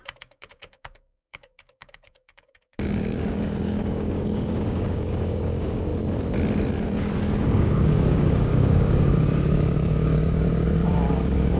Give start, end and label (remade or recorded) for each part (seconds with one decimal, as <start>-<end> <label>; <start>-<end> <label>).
0.0-5.9 remade; 5.9-7.5 recorded; 7.5-11.6 remade